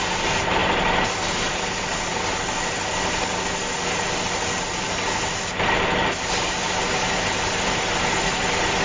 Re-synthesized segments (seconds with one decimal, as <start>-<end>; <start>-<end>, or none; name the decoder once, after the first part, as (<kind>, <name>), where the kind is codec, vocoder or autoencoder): none